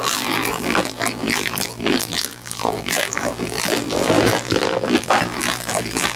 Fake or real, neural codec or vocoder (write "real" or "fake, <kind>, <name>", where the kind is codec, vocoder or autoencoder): fake, vocoder, BigVGAN v2